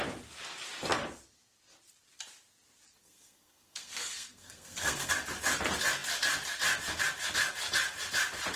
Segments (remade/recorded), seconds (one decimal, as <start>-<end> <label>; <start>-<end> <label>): 0.0-2.9 recorded; 2.9-5.1 remade; 5.1-8.6 recorded